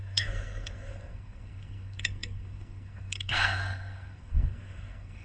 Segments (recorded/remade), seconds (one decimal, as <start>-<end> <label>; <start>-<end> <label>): 0.0-5.2 remade

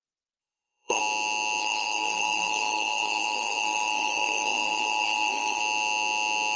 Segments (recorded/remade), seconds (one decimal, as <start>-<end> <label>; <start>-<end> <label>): 0.0-0.4 recorded; 0.4-1.0 remade; 1.0-1.6 recorded; 1.6-5.6 remade; 5.6-6.6 recorded